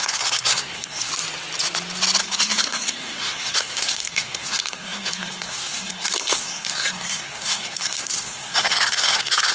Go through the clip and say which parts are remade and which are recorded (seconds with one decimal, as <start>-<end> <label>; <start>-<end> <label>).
0.0-1.1 remade; 1.1-2.2 recorded; 2.2-9.5 remade